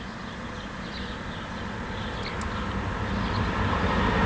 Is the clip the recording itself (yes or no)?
yes